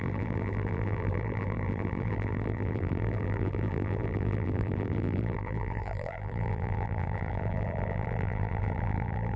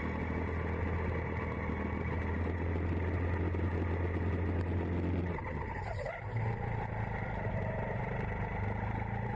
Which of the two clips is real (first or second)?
second